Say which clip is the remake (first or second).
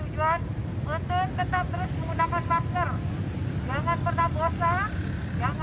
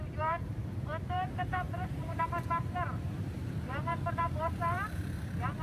second